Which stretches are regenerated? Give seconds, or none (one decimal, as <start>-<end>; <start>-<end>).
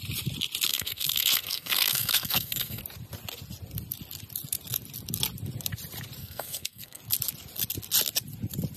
0.7-2.8; 6.2-7.0